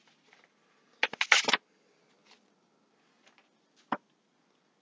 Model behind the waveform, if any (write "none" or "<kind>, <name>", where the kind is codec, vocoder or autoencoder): none